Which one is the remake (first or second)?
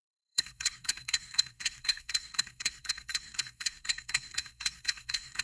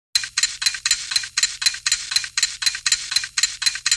first